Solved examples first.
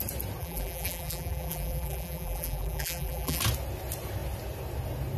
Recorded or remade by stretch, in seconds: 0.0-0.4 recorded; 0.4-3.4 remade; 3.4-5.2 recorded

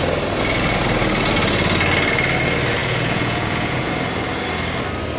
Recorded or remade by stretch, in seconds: 0.0-2.8 recorded; 2.8-3.9 remade; 3.9-5.2 recorded

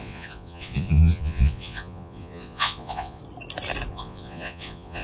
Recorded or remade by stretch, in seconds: 0.0-3.2 remade; 3.2-3.9 recorded; 3.9-5.0 remade

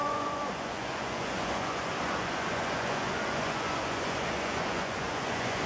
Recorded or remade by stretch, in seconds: 0.0-5.7 remade

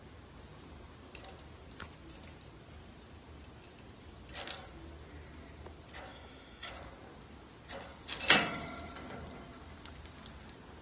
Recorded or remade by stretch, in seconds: 0.0-6.1 recorded; 6.1-6.7 remade; 6.7-10.8 recorded

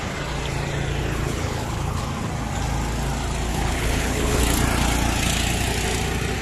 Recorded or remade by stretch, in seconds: 0.0-1.0 recorded; 1.0-2.0 remade; 2.0-3.5 recorded; 3.5-4.4 remade; 4.4-6.4 recorded

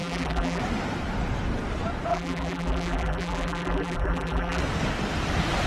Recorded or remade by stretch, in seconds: 0.0-0.6 remade; 0.6-2.1 recorded; 2.1-4.6 remade; 4.6-5.7 recorded

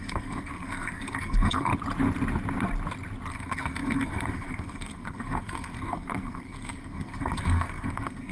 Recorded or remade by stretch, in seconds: 0.0-1.7 remade; 1.7-3.3 recorded; 3.3-8.3 remade